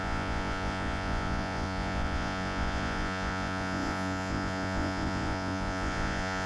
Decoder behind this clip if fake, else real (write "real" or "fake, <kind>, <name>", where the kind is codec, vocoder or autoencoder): fake, vocoder, Vocos